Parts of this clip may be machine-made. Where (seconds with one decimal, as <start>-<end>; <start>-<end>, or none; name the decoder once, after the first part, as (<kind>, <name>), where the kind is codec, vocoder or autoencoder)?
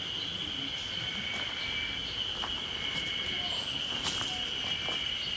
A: none